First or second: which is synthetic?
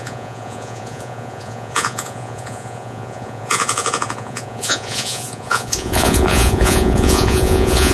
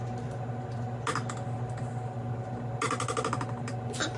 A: first